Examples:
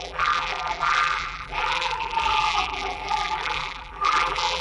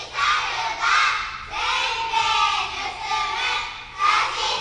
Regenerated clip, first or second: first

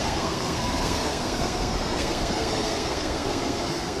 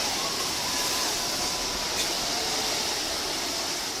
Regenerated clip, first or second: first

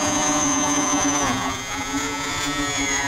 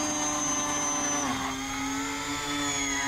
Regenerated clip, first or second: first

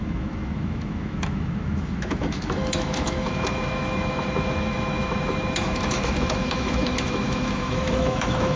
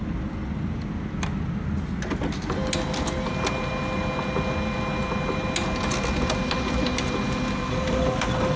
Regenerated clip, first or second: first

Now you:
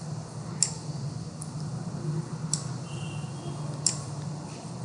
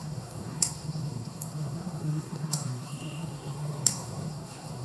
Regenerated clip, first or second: second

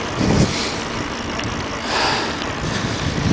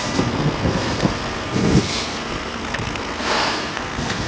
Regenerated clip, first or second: second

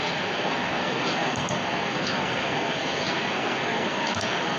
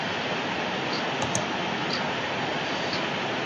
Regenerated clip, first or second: first